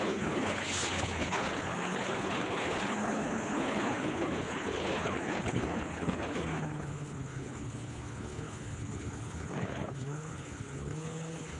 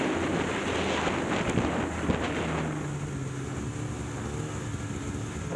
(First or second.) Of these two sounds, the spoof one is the first